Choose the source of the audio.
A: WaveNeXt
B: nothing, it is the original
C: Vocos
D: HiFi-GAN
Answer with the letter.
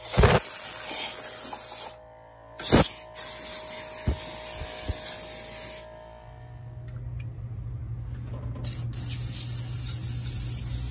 B